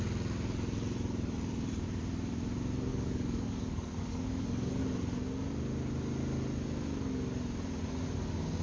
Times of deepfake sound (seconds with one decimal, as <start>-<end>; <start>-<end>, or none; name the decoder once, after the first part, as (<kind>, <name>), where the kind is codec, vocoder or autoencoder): 2.9-4.8 (codec, DAC)